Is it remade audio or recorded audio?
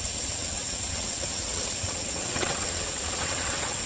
remade